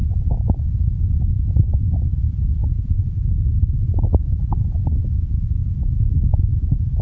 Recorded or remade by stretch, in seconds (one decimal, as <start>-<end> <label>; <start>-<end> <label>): 0.0-5.6 recorded; 5.6-7.0 remade